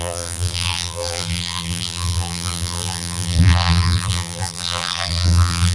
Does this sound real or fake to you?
fake